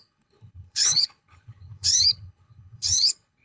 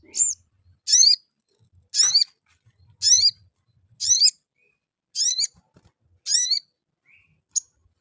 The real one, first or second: second